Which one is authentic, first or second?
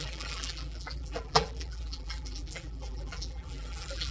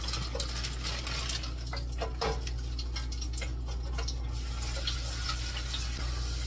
second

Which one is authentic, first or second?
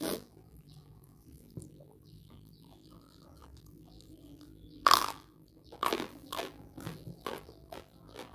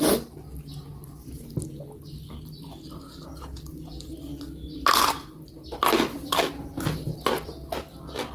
second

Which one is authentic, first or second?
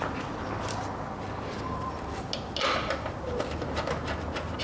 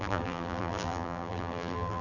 first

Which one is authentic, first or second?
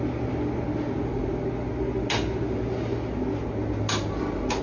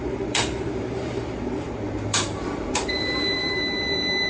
first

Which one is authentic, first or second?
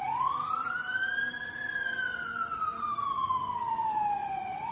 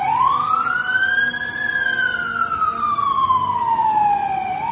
second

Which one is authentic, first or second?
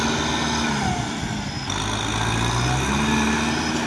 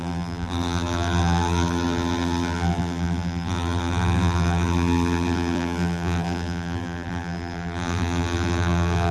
first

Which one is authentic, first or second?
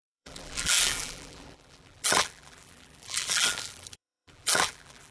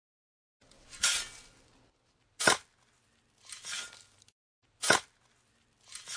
second